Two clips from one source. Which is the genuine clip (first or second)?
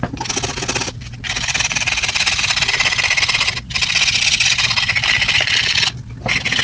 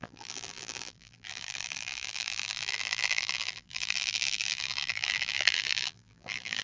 first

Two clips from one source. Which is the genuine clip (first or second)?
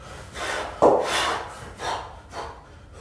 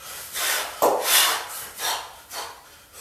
first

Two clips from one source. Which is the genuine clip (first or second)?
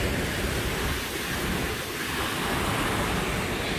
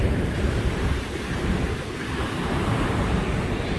first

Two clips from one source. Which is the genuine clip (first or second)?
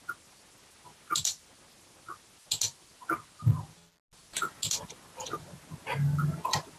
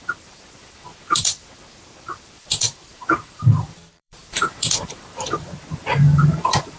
first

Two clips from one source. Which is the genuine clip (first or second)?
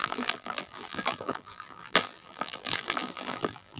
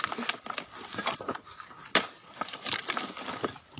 second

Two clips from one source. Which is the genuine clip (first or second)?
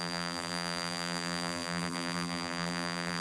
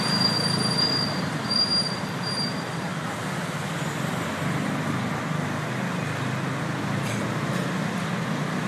second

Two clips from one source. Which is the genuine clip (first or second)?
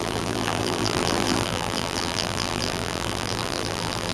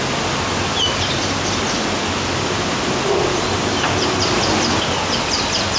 second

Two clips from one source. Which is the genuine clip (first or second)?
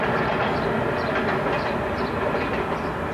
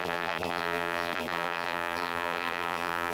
first